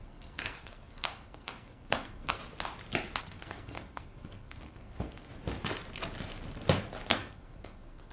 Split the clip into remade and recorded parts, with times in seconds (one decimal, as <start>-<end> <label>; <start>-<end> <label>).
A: 0.0-2.4 remade; 2.4-3.2 recorded; 3.2-5.3 remade; 5.3-7.1 recorded; 7.1-8.1 remade